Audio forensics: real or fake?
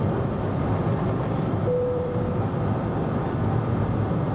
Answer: fake